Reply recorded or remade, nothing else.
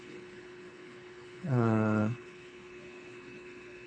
remade